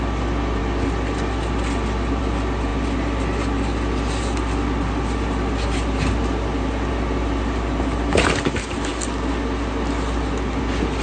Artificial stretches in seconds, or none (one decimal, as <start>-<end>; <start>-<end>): none